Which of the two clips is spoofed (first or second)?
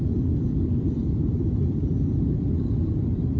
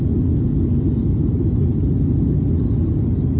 first